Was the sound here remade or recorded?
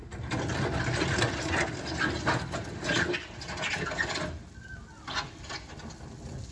recorded